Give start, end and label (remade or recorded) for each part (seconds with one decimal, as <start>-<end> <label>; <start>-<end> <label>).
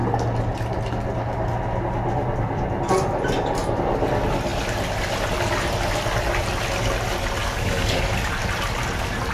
0.0-7.4 recorded; 7.4-8.1 remade; 8.1-9.3 recorded